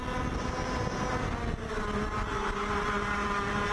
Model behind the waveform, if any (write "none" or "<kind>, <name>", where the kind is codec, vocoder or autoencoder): none